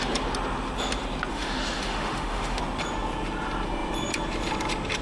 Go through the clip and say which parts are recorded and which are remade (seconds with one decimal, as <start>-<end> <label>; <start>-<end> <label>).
0.0-1.3 recorded; 1.3-2.6 remade; 2.6-5.0 recorded